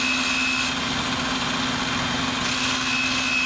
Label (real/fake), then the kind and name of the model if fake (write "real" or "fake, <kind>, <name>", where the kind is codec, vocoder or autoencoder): real